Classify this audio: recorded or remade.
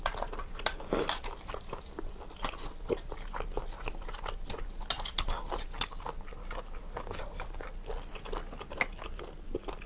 recorded